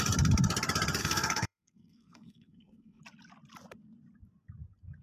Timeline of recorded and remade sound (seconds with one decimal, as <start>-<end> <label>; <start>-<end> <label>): 0.0-1.0 recorded; 1.0-3.0 remade; 3.0-5.0 recorded